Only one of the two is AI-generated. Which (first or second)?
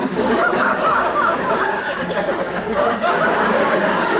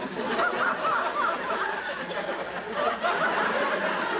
first